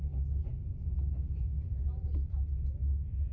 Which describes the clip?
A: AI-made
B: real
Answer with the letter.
B